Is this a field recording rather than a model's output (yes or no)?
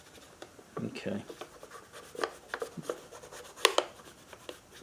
yes